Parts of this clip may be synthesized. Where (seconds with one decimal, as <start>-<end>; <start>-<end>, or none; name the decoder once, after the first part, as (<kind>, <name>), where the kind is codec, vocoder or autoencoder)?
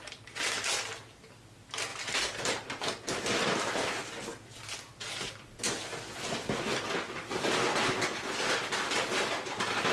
none